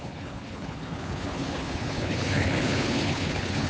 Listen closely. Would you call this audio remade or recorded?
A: remade